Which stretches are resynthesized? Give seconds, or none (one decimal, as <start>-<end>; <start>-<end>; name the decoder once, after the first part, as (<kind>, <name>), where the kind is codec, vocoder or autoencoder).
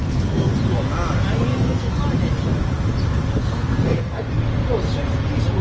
0.0-0.5 (codec, SNAC); 1.5-2.0; 3.4-4.2